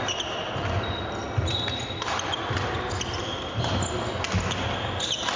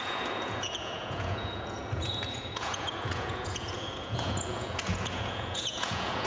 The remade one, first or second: second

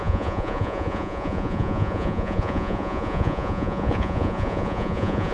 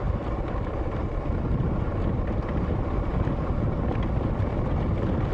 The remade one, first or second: first